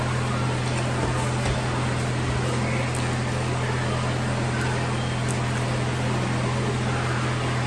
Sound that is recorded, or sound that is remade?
recorded